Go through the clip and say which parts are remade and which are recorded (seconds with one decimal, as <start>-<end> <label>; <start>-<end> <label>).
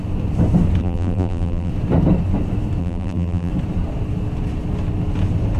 0.0-0.8 recorded; 0.8-1.7 remade; 1.7-2.8 recorded; 2.8-3.5 remade; 3.5-5.6 recorded